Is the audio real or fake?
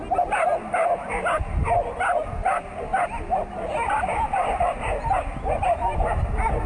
real